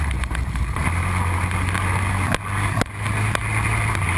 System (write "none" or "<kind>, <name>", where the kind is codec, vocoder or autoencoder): none